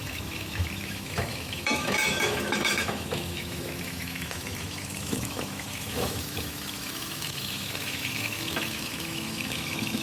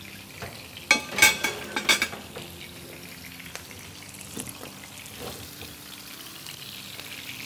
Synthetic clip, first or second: first